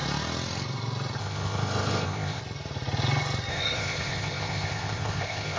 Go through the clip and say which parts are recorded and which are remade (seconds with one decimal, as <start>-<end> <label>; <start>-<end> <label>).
0.0-1.2 recorded; 1.2-2.4 remade; 2.4-3.5 recorded; 3.5-5.6 remade

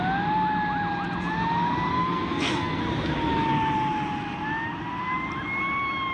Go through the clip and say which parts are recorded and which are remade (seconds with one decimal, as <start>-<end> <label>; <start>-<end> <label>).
0.0-1.9 recorded; 1.9-2.8 remade; 2.8-6.1 recorded

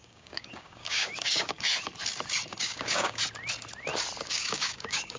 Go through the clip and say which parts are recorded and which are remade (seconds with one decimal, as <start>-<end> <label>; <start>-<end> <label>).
0.0-1.7 remade; 1.7-2.6 recorded; 2.6-3.2 remade; 3.2-4.3 recorded; 4.3-5.2 remade

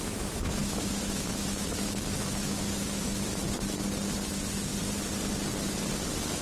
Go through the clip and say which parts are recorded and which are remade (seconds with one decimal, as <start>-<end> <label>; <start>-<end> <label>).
0.0-3.4 remade; 3.4-6.4 recorded

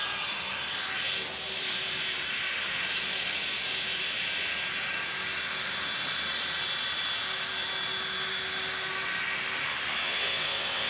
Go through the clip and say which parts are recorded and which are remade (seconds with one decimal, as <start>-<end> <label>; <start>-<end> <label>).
0.0-10.0 recorded; 10.0-10.9 remade

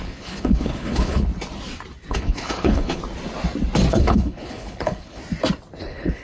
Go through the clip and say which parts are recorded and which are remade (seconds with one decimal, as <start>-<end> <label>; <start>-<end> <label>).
0.0-1.3 remade; 1.3-2.1 recorded; 2.1-3.0 remade; 3.0-3.9 recorded; 3.9-5.2 remade; 5.2-5.8 recorded; 5.8-6.2 remade